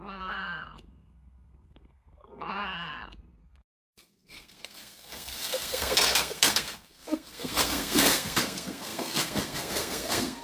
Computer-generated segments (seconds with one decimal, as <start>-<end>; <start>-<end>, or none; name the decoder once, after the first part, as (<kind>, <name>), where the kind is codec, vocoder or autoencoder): 0.0-10.4 (codec, SNAC)